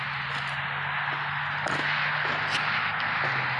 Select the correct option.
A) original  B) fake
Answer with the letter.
A